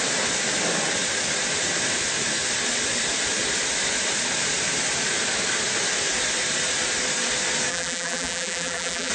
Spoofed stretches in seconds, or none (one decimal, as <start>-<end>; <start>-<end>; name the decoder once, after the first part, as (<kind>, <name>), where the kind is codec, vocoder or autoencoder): 7.7-9.1 (vocoder, BigVGAN v2)